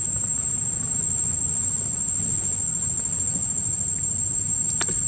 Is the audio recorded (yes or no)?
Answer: yes